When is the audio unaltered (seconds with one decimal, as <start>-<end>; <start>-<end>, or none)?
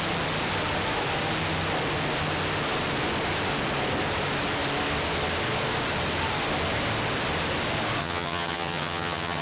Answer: 0.0-8.0